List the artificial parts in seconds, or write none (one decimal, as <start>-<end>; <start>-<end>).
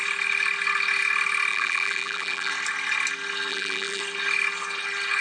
1.5-2.5; 3.5-4.0